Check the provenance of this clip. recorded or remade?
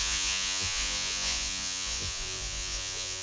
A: remade